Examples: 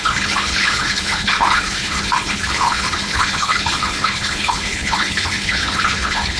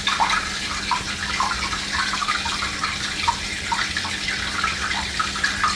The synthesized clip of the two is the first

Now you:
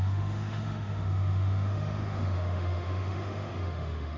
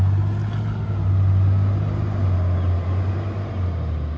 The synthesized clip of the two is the first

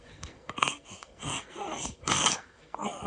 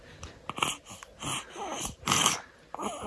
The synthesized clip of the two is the first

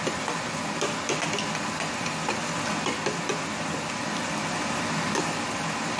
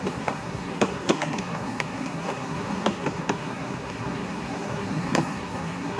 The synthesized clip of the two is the second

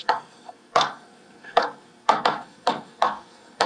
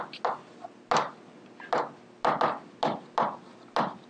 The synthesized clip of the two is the first